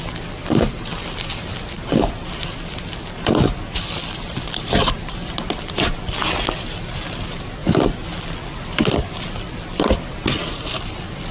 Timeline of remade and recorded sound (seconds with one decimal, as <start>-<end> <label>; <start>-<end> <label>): 0.0-11.3 recorded